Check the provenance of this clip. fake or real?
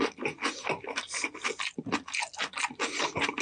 real